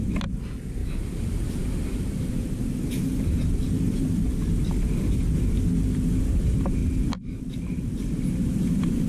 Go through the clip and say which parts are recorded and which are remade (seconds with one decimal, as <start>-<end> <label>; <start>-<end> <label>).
0.0-4.2 remade; 4.2-5.8 recorded; 5.8-9.1 remade